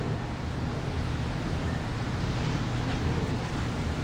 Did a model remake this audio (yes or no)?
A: no